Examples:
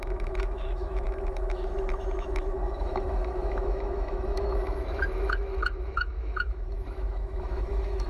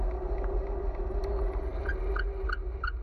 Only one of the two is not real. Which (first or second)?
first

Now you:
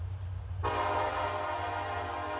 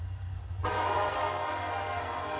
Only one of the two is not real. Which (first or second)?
second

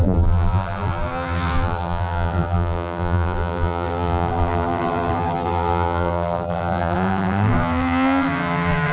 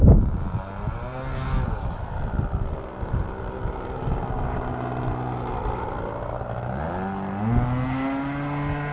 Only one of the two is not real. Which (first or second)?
first